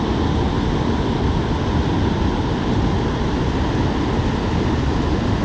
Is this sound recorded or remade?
recorded